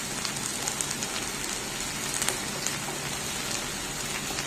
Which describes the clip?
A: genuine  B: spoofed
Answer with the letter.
A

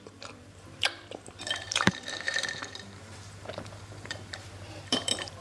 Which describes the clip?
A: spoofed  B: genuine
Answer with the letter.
A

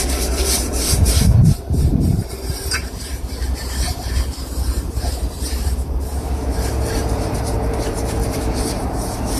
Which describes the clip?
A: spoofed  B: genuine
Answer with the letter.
A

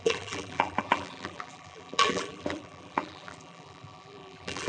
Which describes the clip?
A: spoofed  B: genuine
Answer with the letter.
A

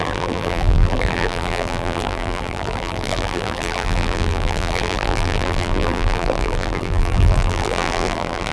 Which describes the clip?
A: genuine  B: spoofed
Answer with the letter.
B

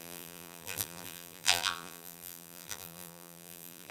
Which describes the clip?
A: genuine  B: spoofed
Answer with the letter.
B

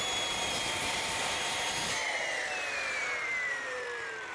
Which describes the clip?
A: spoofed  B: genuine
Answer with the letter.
A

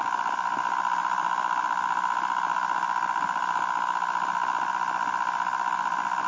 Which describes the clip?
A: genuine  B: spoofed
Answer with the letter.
A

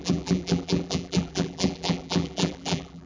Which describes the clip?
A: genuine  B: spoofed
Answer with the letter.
B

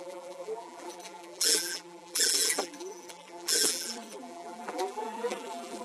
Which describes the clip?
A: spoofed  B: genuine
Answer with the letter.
A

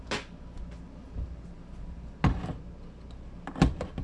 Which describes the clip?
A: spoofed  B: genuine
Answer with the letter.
B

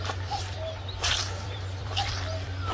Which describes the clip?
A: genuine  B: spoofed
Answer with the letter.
B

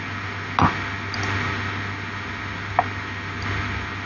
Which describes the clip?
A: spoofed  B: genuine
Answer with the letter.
B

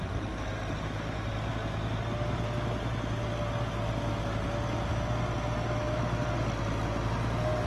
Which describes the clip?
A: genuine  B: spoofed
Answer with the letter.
A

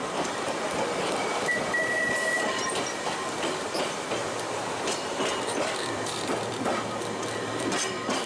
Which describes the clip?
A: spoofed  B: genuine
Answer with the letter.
A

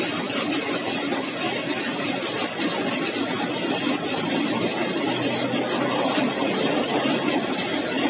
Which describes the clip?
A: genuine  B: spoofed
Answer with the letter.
A